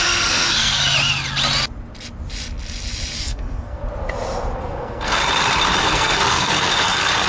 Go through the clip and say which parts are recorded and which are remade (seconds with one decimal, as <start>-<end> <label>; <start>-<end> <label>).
0.0-0.8 remade; 0.8-3.2 recorded; 3.2-3.8 remade; 3.8-4.6 recorded; 4.6-5.2 remade; 5.2-5.8 recorded; 5.8-7.3 remade